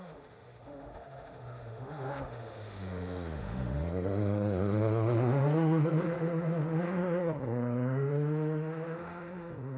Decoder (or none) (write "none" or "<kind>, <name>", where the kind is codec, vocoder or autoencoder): autoencoder, DAC-VAE